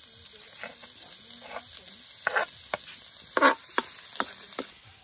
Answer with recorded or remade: recorded